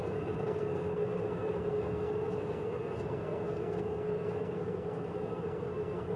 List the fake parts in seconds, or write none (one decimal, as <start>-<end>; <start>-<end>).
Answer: 0.0-6.2